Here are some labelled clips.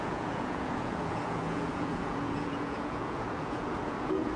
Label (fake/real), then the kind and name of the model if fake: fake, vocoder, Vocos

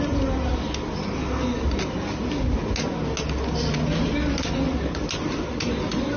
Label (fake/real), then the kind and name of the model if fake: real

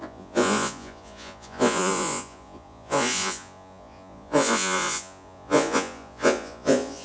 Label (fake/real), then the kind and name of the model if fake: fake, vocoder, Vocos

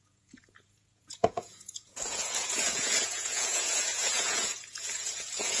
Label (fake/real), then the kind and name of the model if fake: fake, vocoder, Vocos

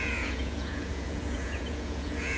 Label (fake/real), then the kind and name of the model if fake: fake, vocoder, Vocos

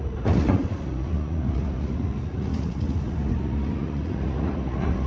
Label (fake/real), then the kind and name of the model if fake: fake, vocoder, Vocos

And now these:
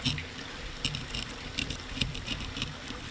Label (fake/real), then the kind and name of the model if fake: real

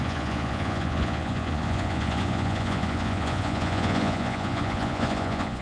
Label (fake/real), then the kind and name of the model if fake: fake, vocoder, Vocos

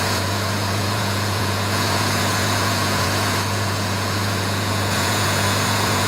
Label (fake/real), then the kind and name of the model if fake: fake, vocoder, Vocos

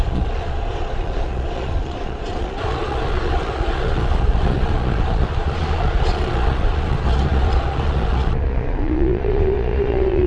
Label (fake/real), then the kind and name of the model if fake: fake, vocoder, Vocos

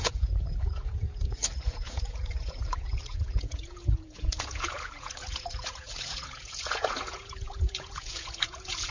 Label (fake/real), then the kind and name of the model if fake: fake, vocoder, Vocos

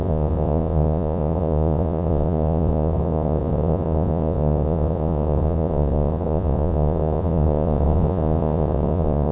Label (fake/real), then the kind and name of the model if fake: fake, vocoder, Vocos